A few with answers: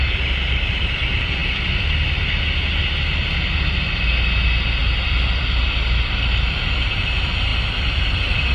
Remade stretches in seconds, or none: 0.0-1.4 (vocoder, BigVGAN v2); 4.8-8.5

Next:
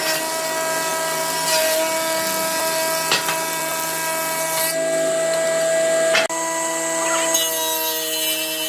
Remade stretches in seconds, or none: none